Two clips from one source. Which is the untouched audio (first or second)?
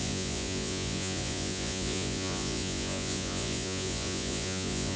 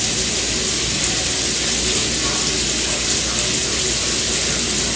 second